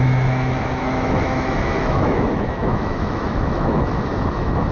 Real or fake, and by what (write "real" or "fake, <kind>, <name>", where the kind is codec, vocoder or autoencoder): fake, autoencoder, DAC-VAE